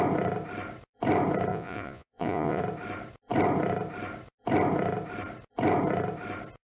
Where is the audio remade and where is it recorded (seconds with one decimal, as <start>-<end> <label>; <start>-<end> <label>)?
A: 0.0-1.5 recorded; 1.5-2.6 remade; 2.6-6.6 recorded